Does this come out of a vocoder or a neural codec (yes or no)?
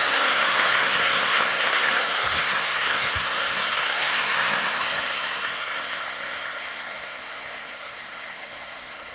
yes